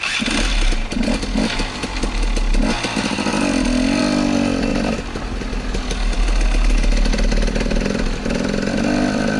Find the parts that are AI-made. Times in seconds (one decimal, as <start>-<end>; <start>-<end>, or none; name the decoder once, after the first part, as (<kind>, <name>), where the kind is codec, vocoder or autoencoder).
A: none